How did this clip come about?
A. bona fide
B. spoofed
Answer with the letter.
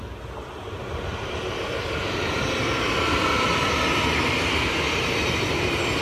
A